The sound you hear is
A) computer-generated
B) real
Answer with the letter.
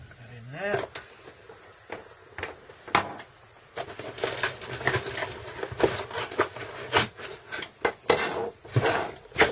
B